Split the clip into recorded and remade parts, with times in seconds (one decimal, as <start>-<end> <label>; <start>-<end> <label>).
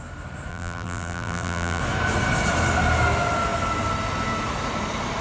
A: 0.0-0.5 recorded; 0.5-1.8 remade; 1.8-5.2 recorded